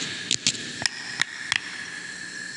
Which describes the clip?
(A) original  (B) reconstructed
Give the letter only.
A